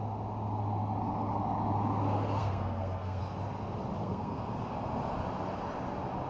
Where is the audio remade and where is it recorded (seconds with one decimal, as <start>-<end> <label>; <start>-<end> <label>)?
0.0-2.4 recorded; 2.4-3.2 remade; 3.2-4.0 recorded; 4.0-4.6 remade; 4.6-6.3 recorded